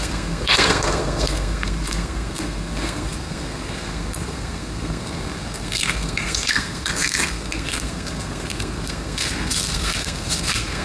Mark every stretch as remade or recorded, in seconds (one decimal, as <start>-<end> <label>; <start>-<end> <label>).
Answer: 0.0-10.8 remade